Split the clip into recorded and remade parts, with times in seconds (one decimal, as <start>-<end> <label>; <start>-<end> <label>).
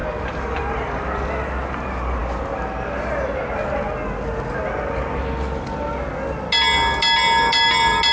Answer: 0.0-8.1 recorded